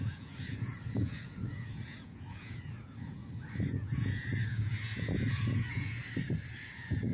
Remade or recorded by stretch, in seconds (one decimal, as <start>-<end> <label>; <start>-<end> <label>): 0.0-6.0 remade; 6.0-6.6 recorded; 6.6-7.1 remade